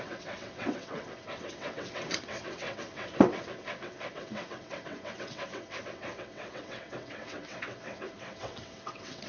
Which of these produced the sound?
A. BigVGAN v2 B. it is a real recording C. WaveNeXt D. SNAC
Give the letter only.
C